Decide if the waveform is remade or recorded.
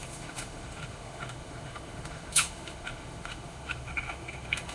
remade